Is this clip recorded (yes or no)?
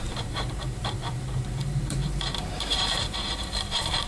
no